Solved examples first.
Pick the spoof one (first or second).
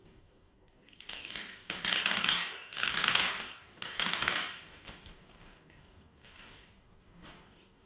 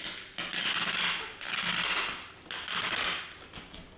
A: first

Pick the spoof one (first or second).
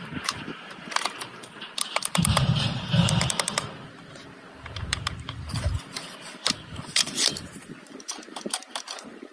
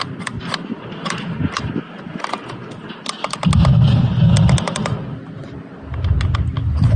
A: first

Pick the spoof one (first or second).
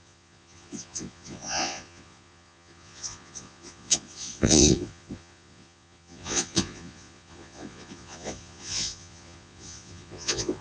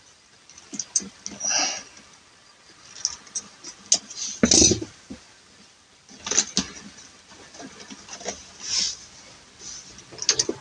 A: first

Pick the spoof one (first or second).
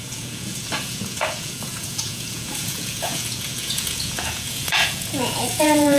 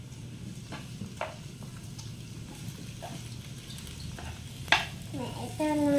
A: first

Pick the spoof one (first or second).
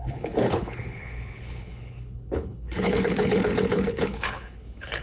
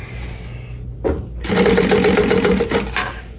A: first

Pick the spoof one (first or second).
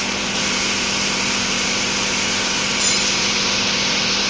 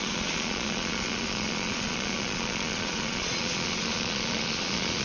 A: second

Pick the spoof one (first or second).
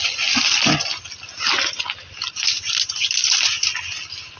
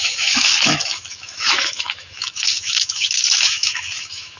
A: second